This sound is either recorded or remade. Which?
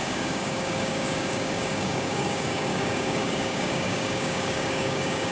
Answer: remade